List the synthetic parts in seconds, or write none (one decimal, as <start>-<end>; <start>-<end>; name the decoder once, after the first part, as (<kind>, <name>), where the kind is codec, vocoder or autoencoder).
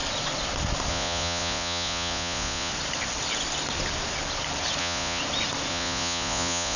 0.9-2.7 (vocoder, Vocos); 4.8-5.2; 5.7-6.8